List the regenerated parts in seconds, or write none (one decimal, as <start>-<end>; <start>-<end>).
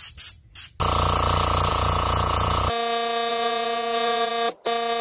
1.7-2.6; 3.3-4.3